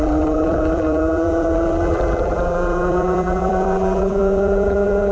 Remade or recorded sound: remade